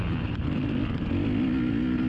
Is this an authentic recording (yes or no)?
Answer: yes